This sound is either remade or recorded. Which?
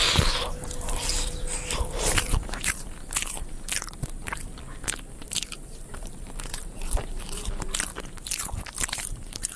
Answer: remade